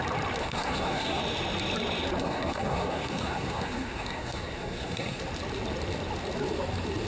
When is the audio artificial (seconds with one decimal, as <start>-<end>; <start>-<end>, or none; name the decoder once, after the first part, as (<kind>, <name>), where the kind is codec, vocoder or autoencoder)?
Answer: 0.4-1.2 (codec, SNAC); 2.2-5.2